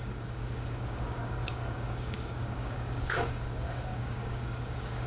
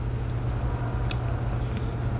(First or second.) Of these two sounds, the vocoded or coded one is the first